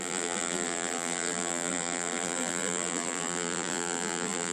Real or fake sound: fake